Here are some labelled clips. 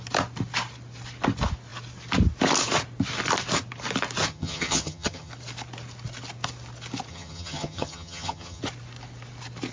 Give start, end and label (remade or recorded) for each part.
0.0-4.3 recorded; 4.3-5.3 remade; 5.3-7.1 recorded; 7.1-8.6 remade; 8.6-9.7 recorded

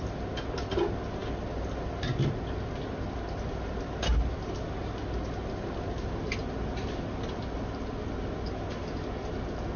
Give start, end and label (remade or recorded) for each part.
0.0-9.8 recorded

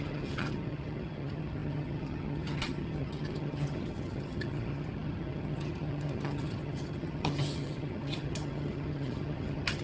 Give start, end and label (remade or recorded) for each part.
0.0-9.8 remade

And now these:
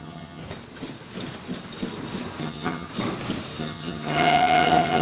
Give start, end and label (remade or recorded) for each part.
0.0-0.4 remade; 0.4-2.4 recorded; 2.4-2.9 remade; 2.9-3.6 recorded; 3.6-5.0 remade

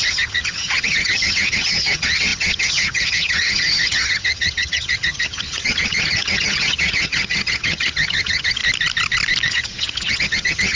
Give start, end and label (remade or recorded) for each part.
0.0-8.6 remade; 8.6-9.5 recorded; 9.5-10.8 remade